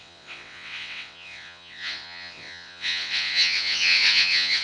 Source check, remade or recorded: remade